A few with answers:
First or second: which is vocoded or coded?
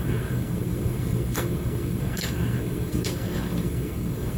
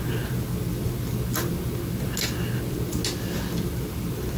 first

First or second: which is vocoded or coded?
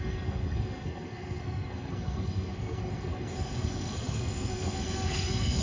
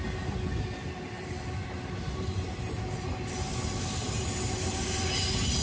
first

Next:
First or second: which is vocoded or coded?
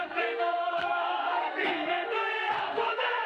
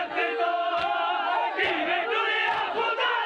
first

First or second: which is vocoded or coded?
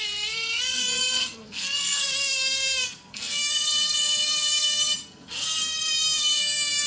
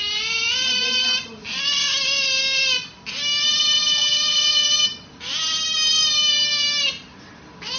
first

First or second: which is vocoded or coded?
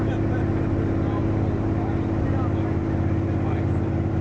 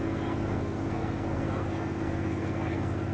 second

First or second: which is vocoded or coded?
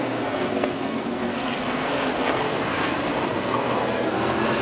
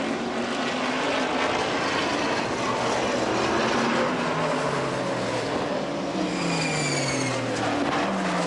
first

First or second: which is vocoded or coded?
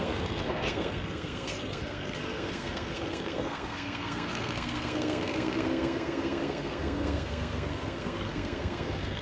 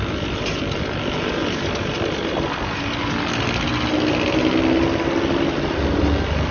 first